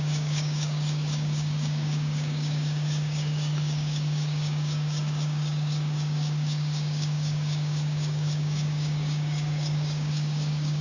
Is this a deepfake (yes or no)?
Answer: yes